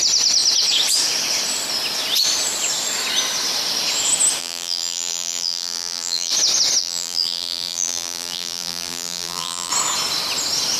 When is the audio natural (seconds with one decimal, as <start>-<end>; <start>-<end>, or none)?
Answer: 0.0-4.4; 6.3-6.8; 9.7-10.8